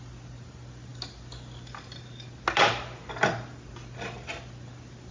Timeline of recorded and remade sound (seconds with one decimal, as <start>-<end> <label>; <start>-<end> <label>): 0.0-5.1 recorded